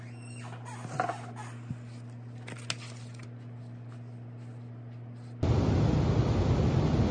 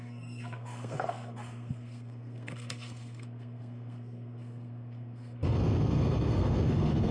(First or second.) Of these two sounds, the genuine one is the first